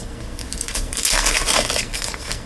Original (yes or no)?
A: no